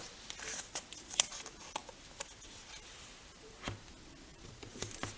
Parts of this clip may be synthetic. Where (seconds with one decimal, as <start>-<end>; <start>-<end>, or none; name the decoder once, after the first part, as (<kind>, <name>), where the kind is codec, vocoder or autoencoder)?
4.3-4.8 (vocoder, Vocos)

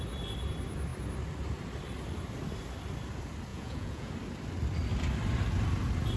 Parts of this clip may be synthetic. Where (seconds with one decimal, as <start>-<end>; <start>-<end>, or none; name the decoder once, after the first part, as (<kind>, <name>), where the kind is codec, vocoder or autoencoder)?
3.5-4.1 (vocoder, Vocos)

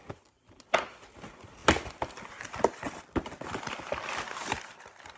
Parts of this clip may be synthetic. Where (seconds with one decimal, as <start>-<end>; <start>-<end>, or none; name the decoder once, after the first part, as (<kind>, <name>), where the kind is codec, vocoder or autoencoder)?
none

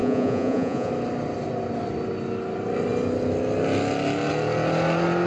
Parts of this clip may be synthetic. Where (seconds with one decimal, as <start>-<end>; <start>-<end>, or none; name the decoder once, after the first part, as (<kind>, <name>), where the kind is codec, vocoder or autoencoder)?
0.0-0.9 (vocoder, Vocos)

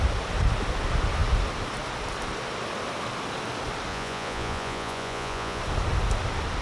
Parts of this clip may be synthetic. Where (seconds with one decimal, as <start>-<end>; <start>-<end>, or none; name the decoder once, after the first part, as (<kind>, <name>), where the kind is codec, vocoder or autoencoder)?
3.9-5.6 (vocoder, Vocos)

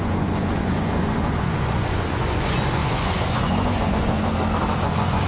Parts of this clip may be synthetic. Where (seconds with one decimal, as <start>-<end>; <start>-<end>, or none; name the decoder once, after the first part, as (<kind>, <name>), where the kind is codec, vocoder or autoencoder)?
0.0-4.3 (vocoder, Vocos); 4.8-5.3